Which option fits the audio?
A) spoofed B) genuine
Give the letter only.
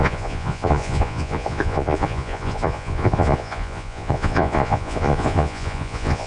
A